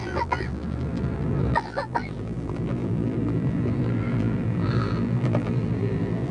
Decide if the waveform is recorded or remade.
remade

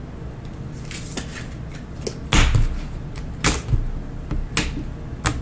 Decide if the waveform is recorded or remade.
recorded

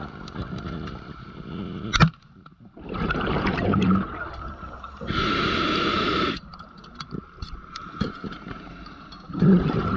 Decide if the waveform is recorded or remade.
remade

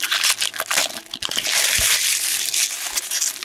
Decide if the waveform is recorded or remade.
recorded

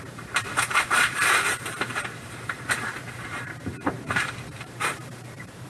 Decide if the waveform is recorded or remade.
remade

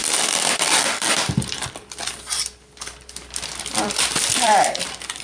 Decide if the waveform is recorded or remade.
remade